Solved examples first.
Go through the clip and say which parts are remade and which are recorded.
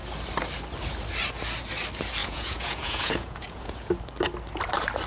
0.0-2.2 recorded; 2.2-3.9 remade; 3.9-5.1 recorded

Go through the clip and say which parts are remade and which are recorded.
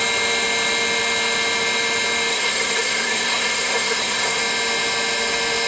0.0-2.3 recorded; 2.3-4.4 remade; 4.4-5.7 recorded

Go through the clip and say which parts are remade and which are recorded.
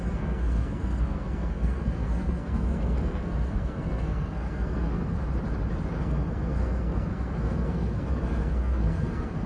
0.0-5.2 remade; 5.2-6.0 recorded; 6.0-9.5 remade